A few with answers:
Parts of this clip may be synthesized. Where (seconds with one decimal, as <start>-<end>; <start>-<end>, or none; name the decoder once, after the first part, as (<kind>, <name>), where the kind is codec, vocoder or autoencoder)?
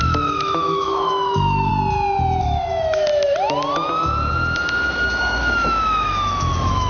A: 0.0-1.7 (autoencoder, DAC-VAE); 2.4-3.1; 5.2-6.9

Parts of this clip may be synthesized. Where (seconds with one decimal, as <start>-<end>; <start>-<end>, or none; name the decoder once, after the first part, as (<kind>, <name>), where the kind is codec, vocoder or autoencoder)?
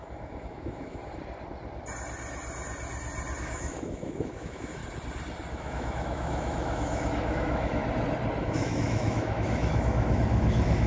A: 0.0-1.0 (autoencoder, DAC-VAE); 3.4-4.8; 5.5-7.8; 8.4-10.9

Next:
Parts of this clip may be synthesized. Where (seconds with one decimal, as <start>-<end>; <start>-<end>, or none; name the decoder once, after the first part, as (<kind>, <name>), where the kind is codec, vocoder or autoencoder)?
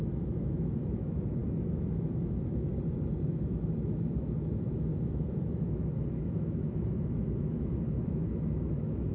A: 0.0-1.4 (autoencoder, DAC-VAE); 2.0-2.7; 3.3-9.1